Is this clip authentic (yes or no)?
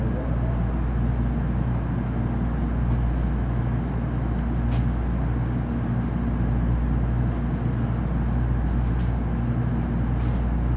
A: yes